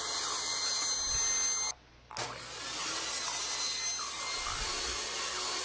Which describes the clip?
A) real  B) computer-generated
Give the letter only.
A